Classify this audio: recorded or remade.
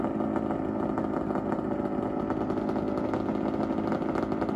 recorded